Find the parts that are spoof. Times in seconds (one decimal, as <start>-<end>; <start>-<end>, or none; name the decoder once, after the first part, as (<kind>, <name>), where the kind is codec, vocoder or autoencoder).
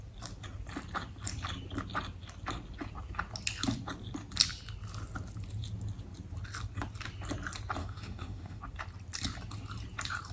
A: 7.8-8.6 (autoencoder, DAC-VAE)